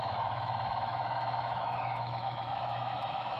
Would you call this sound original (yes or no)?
no